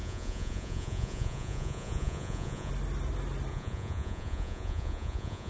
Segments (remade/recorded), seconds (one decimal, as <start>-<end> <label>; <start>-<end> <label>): 0.0-2.7 remade; 2.7-3.5 recorded; 3.5-5.5 remade